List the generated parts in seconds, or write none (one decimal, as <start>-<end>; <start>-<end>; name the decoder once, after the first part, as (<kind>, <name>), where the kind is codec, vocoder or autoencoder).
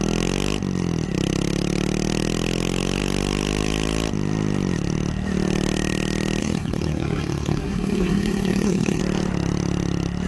6.4-9.0 (codec, SNAC)